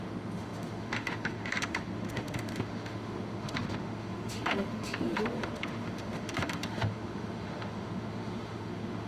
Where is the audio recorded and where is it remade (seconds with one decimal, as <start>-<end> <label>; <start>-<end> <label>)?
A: 0.0-9.1 remade